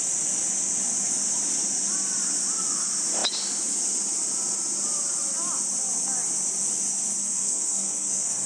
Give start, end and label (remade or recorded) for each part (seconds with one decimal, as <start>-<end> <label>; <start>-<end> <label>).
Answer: 0.0-7.2 recorded; 7.2-8.5 remade